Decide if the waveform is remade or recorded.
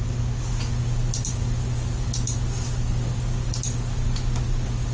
recorded